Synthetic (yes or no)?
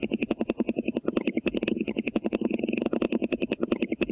no